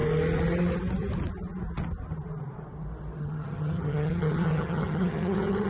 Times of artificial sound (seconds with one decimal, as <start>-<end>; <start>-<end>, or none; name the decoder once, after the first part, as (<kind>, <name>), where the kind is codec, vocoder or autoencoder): 3.2-5.7 (vocoder, HiFi-GAN)